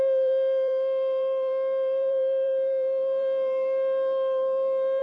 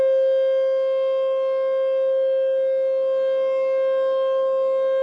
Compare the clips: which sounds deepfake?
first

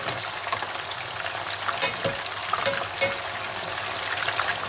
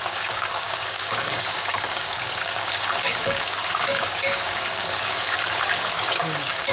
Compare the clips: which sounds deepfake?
second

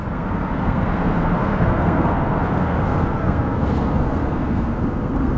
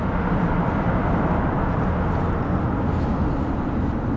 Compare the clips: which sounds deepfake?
first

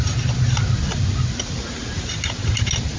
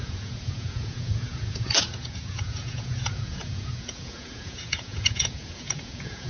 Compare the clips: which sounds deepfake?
second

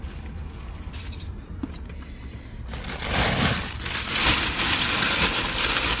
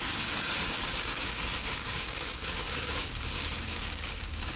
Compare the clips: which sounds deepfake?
second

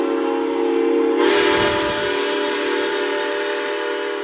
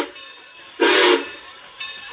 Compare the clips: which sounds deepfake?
second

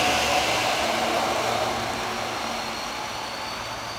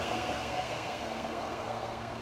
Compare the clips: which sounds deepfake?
second